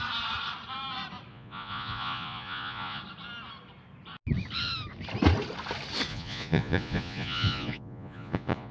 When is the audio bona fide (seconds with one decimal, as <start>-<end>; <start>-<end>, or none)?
0.0-1.3; 3.0-6.1